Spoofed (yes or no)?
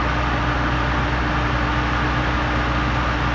no